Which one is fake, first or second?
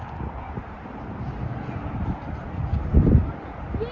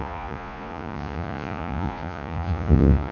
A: second